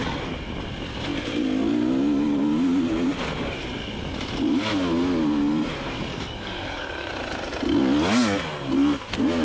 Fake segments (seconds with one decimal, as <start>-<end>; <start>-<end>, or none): 6.1-7.1